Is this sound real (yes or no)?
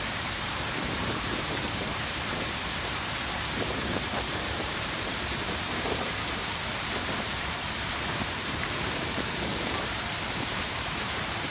no